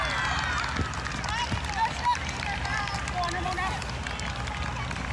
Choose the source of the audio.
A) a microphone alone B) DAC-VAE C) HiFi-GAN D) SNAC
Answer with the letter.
A